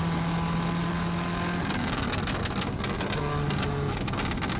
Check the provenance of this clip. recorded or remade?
recorded